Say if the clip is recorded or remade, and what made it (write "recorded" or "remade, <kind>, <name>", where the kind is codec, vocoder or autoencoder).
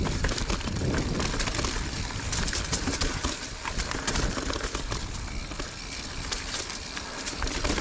remade, vocoder, BigVGAN v2